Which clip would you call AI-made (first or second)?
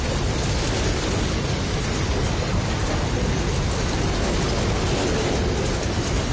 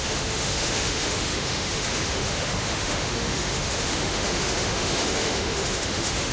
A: second